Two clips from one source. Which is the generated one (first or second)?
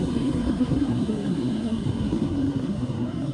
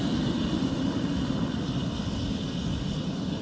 first